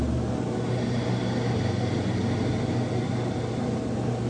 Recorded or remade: recorded